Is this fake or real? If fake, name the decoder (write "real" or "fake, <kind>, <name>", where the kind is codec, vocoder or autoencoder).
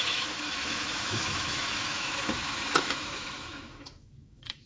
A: fake, autoencoder, DAC-VAE